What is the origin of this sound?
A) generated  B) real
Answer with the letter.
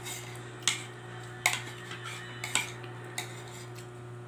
B